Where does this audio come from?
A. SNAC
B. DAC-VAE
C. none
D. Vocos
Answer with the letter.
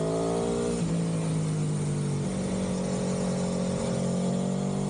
C